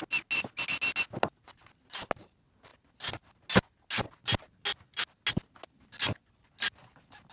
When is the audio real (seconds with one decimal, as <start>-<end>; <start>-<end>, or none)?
0.0-7.3